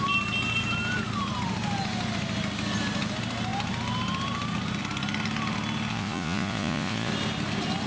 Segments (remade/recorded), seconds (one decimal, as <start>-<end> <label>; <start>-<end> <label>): 0.0-5.9 recorded; 5.9-7.1 remade; 7.1-7.9 recorded